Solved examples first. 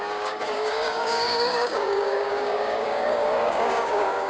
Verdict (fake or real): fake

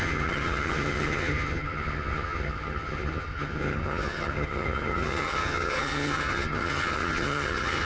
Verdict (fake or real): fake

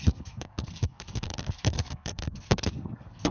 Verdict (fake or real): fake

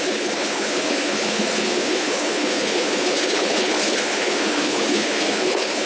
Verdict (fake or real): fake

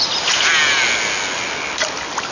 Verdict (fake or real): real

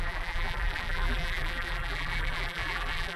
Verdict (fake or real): fake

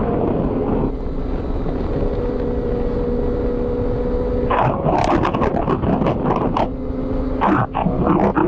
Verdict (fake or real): real